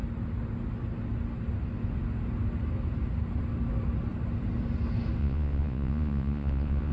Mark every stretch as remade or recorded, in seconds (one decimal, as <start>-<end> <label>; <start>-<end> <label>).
0.0-5.2 recorded; 5.2-6.9 remade